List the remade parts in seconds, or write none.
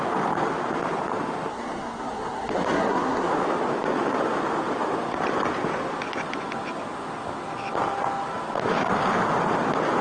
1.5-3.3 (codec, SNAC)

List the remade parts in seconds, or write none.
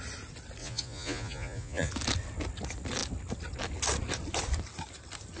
0.6-1.9 (vocoder, Vocos)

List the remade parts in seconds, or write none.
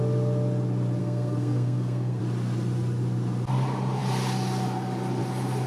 1.0-2.2 (codec, SNAC)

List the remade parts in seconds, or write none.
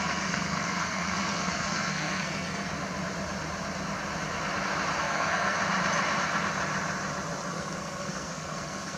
0.0-2.7 (codec, SNAC); 5.0-5.6; 7.5-9.0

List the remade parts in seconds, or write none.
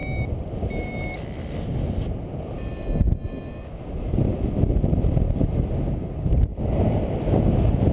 none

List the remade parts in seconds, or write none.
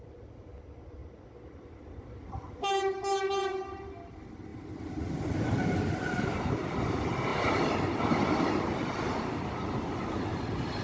4.5-5.1 (vocoder, BigVGAN v2); 7.3-8.0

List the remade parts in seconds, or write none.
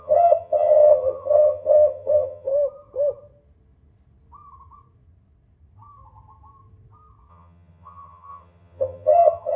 0.0-2.5 (vocoder, HiFi-GAN); 7.3-9.6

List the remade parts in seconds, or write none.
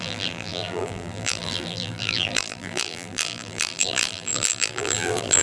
0.0-5.4 (vocoder, BigVGAN v2)